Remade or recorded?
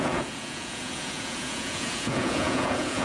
remade